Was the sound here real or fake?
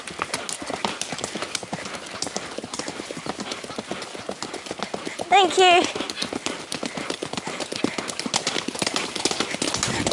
real